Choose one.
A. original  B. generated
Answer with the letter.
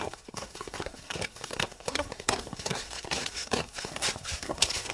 B